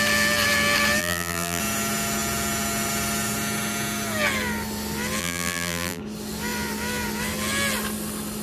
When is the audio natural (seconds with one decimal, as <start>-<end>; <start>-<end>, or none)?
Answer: 0.0-1.0; 1.6-5.2; 6.0-8.4

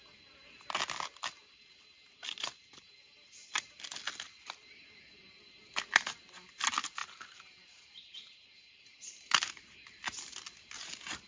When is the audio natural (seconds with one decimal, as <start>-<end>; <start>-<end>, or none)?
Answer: 0.0-7.0; 9.9-11.3

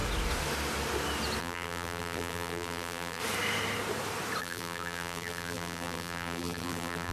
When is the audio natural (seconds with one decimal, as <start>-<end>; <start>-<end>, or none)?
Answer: 0.0-1.4; 3.2-4.4

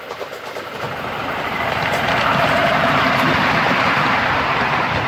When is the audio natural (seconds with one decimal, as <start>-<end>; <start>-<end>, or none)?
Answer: 0.0-1.2; 4.3-5.1

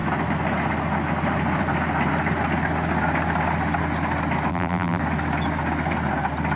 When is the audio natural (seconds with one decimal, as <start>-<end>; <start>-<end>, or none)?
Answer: 0.0-4.5; 5.0-6.6

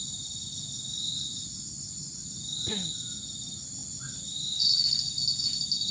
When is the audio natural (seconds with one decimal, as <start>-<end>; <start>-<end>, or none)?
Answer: 0.0-5.9

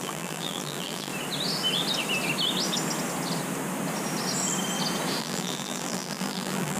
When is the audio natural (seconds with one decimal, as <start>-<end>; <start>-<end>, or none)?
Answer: 1.1-5.2